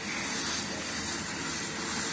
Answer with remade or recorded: recorded